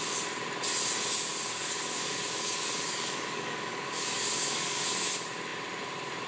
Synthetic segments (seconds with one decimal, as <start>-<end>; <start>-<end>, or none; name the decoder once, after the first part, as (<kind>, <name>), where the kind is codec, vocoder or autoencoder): 1.3-5.1 (codec, DAC)